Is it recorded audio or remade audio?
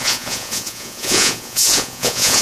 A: remade